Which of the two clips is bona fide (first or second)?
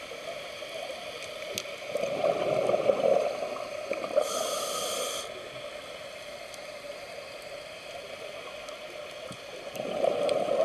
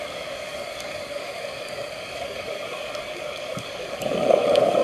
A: first